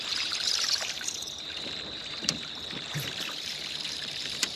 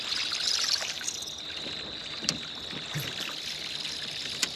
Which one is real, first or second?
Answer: second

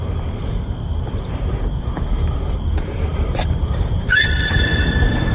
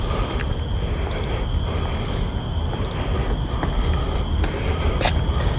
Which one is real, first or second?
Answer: second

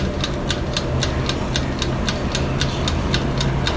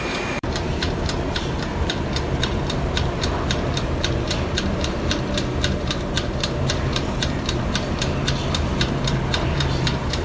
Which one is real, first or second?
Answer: first